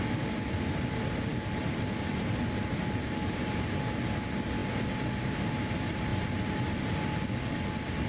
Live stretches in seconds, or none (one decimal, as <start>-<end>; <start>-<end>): 0.0-8.1